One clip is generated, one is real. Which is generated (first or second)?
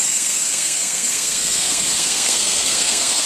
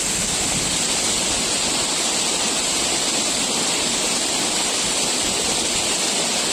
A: first